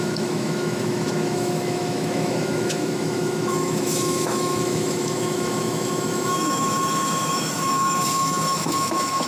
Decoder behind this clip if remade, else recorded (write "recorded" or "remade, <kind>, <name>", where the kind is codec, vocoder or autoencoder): remade, autoencoder, DAC-VAE